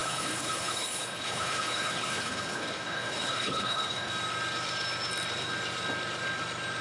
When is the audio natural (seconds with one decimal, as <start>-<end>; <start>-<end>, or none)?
4.1-6.8